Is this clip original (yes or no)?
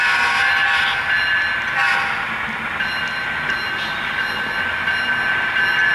yes